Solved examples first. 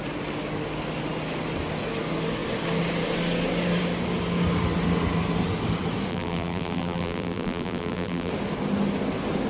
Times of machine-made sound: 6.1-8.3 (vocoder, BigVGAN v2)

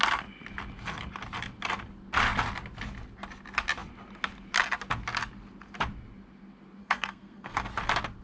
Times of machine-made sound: 6.8-7.7 (codec, SNAC)

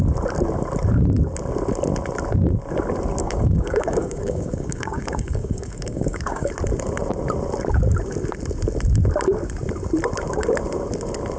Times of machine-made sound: 3.2-6.5 (codec, DAC)

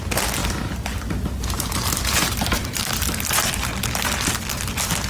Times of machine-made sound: 0.4-3.5 (vocoder, BigVGAN v2)

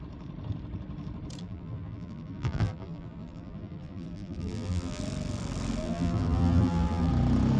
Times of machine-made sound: 1.4-5.0 (vocoder, BigVGAN v2); 5.8-7.1

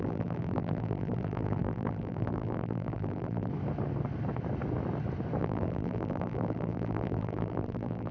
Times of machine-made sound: 0.0-3.5 (vocoder, BigVGAN v2); 5.4-8.1

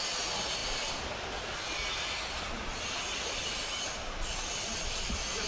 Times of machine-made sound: none